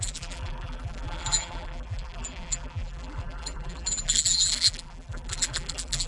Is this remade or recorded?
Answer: remade